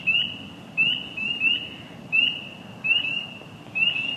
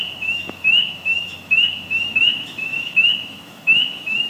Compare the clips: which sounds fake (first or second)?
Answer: second